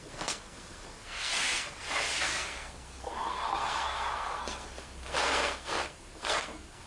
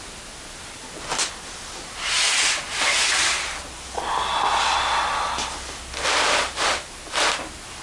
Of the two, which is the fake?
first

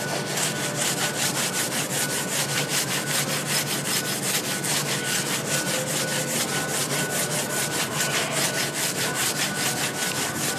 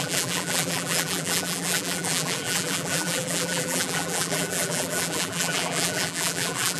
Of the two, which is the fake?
second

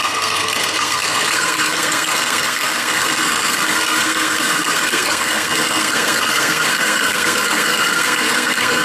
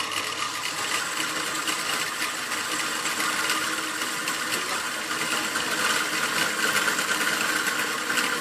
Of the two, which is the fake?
first